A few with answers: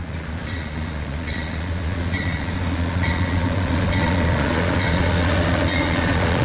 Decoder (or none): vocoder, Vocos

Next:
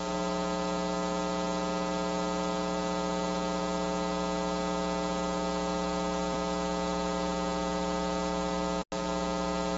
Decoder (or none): none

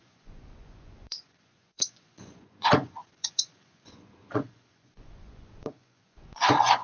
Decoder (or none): vocoder, Vocos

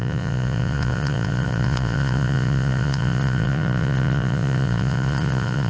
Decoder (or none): vocoder, Vocos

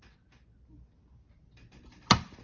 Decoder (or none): none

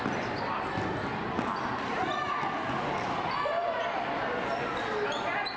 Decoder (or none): none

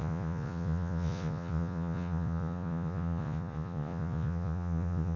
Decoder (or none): vocoder, Vocos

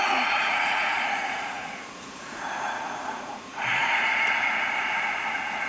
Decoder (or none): vocoder, Vocos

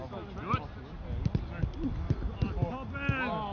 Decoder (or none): none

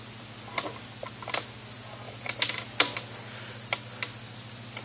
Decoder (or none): none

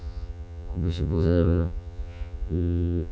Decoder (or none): vocoder, Vocos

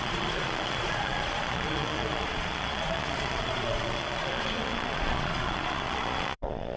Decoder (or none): vocoder, Vocos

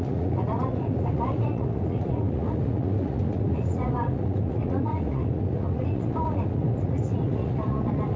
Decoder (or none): vocoder, Vocos